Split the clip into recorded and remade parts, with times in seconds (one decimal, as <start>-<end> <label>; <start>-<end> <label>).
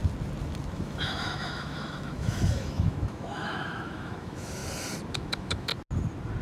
0.0-0.7 recorded; 0.7-4.6 remade; 4.6-5.1 recorded; 5.1-5.7 remade; 5.7-6.4 recorded